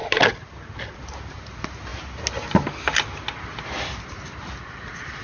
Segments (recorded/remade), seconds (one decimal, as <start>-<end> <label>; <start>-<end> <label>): 0.0-5.2 recorded